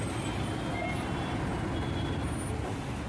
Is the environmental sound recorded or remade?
recorded